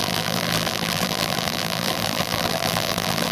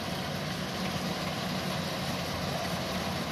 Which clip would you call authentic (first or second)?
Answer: second